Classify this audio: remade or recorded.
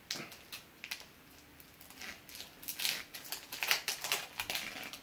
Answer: recorded